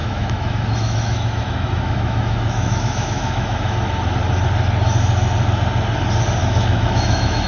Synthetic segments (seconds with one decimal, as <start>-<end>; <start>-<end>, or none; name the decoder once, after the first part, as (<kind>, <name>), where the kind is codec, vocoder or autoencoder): 0.0-3.9 (autoencoder, DAC-VAE); 6.4-7.5